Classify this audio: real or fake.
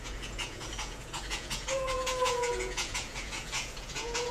fake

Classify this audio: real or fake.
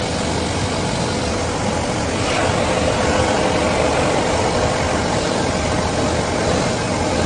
real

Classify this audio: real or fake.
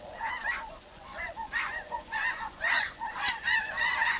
fake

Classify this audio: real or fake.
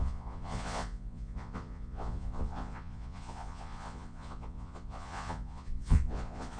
fake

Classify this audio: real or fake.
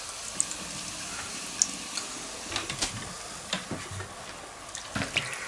real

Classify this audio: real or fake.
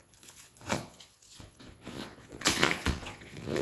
fake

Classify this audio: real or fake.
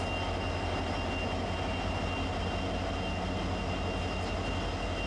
real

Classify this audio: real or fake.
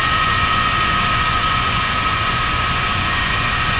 fake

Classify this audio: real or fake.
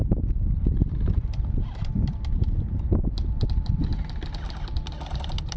real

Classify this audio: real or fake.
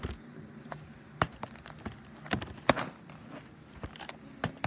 real